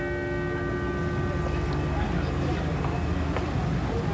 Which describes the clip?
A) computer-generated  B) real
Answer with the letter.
B